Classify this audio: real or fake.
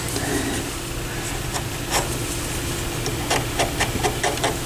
real